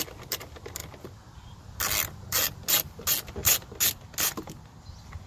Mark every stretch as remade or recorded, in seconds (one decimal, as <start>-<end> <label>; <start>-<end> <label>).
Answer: 0.0-5.3 recorded